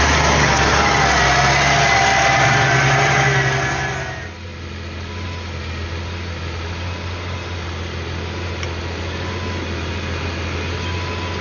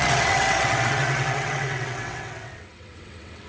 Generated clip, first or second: second